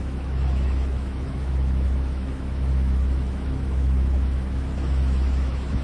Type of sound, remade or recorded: remade